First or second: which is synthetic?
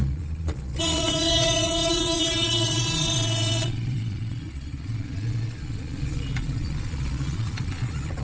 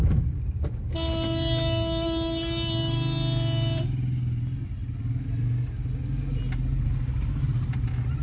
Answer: first